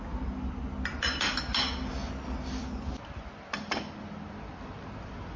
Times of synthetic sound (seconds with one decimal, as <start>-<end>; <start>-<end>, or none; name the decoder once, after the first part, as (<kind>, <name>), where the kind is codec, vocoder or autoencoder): none